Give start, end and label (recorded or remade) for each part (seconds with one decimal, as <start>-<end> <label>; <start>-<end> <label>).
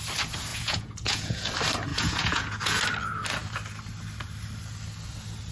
0.0-0.5 recorded; 0.5-1.5 remade; 1.5-1.9 recorded; 1.9-2.8 remade; 2.8-5.5 recorded